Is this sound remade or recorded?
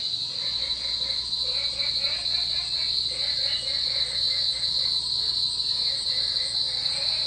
recorded